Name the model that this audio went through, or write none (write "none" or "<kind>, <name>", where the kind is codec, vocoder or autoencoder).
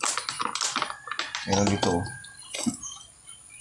none